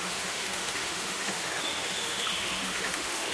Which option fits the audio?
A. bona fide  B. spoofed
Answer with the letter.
B